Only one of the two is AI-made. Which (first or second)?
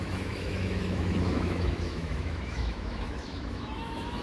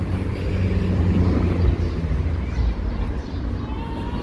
first